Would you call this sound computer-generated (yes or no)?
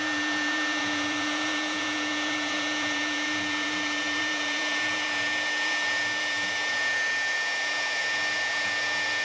yes